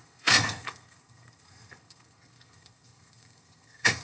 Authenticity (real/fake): fake